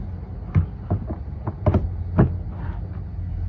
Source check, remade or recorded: recorded